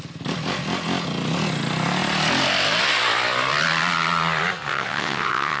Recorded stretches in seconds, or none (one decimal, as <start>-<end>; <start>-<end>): 0.0-4.7